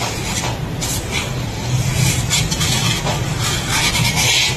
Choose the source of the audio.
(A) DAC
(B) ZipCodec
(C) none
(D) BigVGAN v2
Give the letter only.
C